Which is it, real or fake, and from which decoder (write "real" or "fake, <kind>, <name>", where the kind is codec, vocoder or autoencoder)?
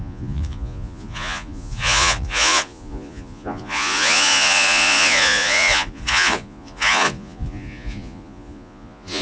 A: fake, vocoder, Vocos